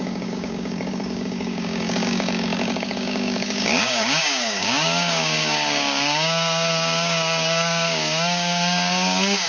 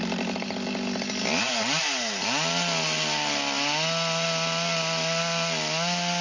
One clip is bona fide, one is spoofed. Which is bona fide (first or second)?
second